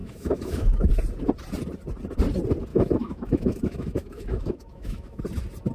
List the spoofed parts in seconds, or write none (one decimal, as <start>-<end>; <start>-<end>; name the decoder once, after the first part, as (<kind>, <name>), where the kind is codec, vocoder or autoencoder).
0.0-0.9 (autoencoder, DAC-VAE); 2.7-5.2